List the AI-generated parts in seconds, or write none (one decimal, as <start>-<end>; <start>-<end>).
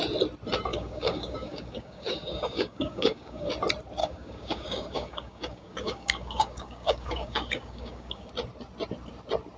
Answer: 0.7-3.5; 4.0-8.3